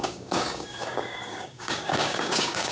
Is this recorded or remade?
remade